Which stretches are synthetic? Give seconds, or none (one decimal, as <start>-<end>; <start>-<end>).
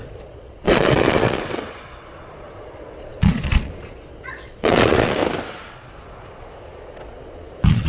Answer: 0.0-5.2; 5.7-7.9